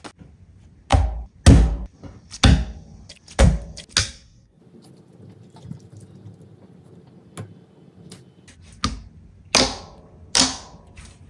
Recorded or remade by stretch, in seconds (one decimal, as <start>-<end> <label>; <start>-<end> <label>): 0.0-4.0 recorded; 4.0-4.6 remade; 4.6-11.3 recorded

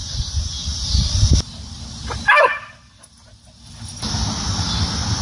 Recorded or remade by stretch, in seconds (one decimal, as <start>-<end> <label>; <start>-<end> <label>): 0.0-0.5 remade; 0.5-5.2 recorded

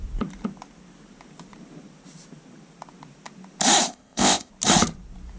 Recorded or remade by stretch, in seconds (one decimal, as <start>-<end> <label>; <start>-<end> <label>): 0.0-3.9 recorded; 3.9-4.5 remade; 4.5-5.4 recorded

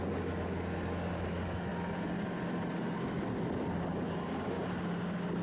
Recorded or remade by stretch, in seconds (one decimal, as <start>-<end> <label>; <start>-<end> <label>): 0.0-5.4 recorded

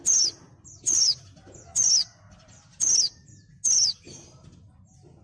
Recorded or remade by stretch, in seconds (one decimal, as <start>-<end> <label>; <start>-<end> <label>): 0.0-5.2 recorded

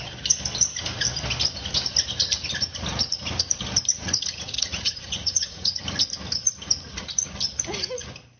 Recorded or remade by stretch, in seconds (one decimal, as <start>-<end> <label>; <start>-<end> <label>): 0.0-3.9 recorded; 3.9-5.8 remade; 5.8-8.4 recorded

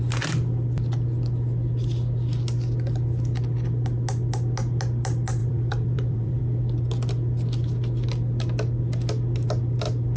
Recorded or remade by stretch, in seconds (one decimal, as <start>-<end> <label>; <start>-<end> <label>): 0.0-5.4 recorded; 5.4-6.4 remade; 6.4-10.2 recorded